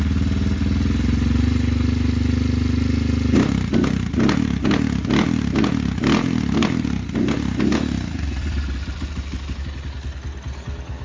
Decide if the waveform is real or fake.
real